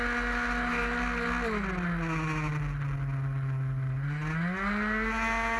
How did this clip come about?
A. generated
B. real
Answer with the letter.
B